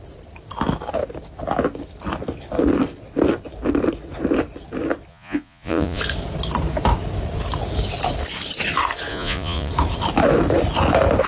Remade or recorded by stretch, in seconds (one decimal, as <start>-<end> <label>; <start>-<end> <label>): 0.0-5.1 recorded; 5.1-6.0 remade; 6.0-9.1 recorded; 9.1-9.7 remade; 9.7-11.3 recorded